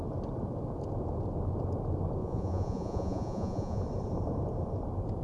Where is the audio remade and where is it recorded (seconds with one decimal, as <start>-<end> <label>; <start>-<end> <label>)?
0.0-2.2 recorded; 2.2-3.8 remade; 3.8-5.2 recorded